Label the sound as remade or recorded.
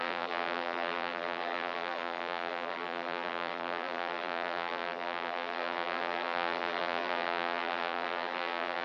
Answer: remade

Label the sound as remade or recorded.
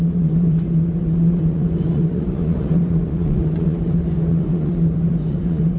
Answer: remade